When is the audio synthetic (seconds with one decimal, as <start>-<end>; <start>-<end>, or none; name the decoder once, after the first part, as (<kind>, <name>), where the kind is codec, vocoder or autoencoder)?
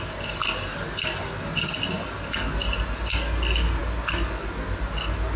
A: none